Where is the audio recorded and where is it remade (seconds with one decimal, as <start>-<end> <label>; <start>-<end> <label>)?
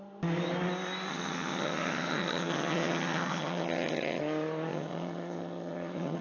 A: 0.0-1.1 recorded; 1.1-4.2 remade; 4.2-4.7 recorded; 4.7-6.2 remade